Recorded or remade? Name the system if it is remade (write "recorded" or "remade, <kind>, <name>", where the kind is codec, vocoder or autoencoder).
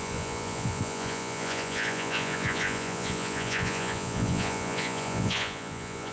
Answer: remade, vocoder, Vocos